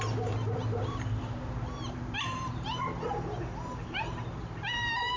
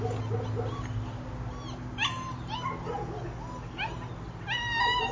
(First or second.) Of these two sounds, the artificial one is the first